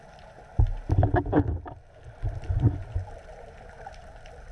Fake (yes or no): no